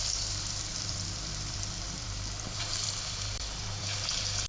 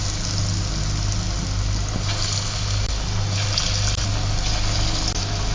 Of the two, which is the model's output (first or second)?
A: first